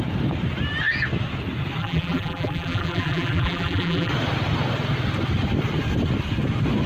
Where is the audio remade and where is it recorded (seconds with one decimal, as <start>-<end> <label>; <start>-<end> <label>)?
0.0-1.8 recorded; 1.8-4.1 remade; 4.1-6.9 recorded